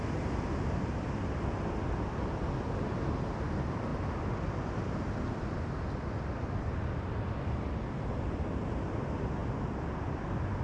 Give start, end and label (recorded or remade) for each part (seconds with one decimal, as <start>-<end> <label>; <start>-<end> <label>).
0.0-10.6 recorded